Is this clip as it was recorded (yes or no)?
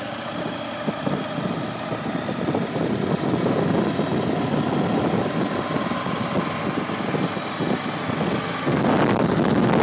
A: yes